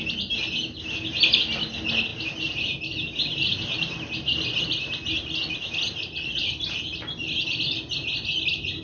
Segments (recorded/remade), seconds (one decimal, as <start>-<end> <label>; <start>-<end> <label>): 0.0-8.8 recorded